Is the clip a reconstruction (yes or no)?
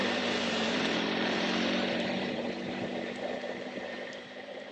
yes